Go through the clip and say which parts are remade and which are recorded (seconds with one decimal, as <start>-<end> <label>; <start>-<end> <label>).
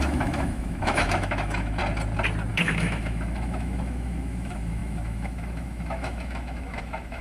0.0-1.8 remade; 1.8-2.5 recorded; 2.5-7.2 remade